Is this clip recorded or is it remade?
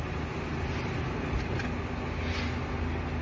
recorded